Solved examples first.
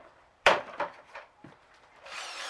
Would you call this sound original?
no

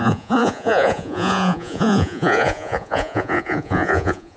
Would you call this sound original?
no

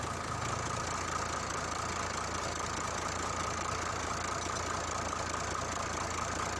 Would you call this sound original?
yes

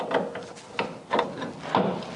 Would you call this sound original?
yes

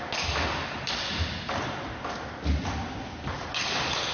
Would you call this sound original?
yes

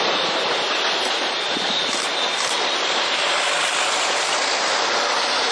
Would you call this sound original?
yes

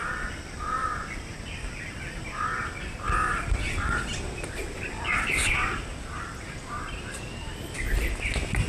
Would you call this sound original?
yes